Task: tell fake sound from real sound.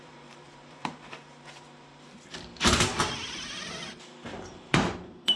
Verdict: fake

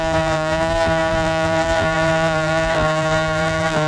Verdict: fake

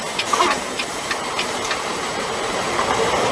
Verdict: fake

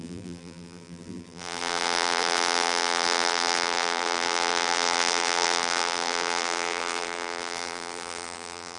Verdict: fake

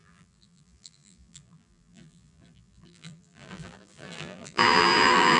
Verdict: fake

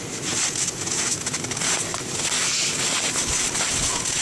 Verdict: real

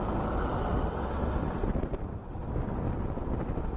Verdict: real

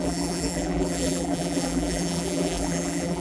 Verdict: fake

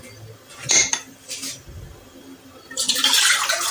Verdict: real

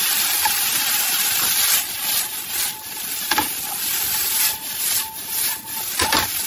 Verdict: real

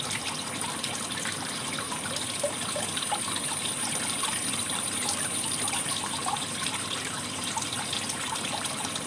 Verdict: fake